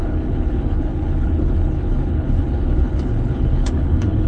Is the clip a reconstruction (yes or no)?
yes